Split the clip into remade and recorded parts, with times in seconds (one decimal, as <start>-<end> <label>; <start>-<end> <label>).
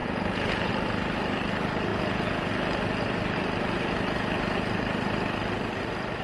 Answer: 0.0-0.7 remade; 0.7-1.9 recorded; 1.9-2.5 remade; 2.5-6.2 recorded